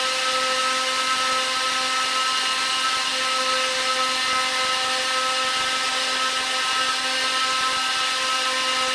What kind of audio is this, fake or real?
real